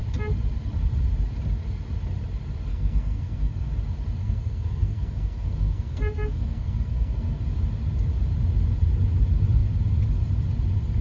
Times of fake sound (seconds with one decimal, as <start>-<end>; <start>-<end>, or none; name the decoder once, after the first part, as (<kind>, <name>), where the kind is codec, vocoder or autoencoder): 2.7-3.7 (codec, SNAC); 4.2-7.4